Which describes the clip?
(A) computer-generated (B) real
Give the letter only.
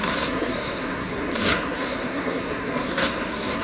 A